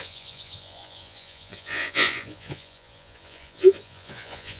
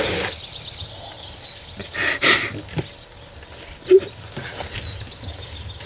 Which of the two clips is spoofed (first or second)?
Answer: first